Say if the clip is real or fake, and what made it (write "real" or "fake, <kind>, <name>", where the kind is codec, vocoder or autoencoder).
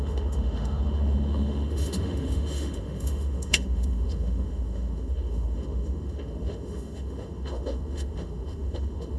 fake, autoencoder, DAC-VAE